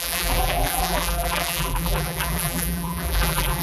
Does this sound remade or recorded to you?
remade